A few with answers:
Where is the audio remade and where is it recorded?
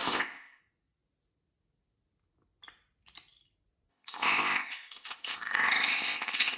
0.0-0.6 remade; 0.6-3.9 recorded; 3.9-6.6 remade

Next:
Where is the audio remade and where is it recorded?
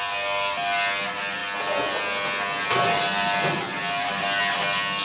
0.0-5.0 recorded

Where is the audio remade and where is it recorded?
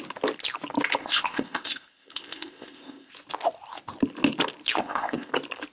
0.0-1.0 recorded; 1.0-3.1 remade; 3.1-4.8 recorded; 4.8-5.3 remade; 5.3-5.7 recorded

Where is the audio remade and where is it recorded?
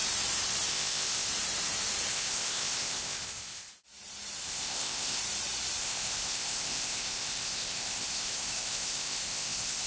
0.0-0.7 recorded; 0.7-1.3 remade; 1.3-2.1 recorded; 2.1-3.7 remade; 3.7-4.4 recorded; 4.4-5.2 remade; 5.2-5.8 recorded; 5.8-9.9 remade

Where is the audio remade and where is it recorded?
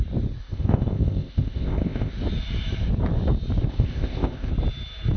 0.0-0.4 recorded; 0.4-2.1 remade; 2.1-3.7 recorded; 3.7-4.5 remade; 4.5-5.2 recorded